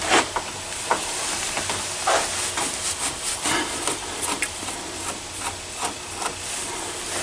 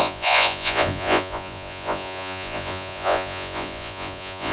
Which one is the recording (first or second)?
first